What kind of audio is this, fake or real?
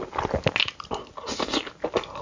real